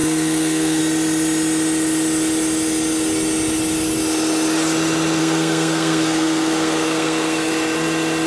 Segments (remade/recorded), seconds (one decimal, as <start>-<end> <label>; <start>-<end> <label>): 0.0-0.8 remade; 0.8-5.2 recorded; 5.2-7.5 remade; 7.5-8.3 recorded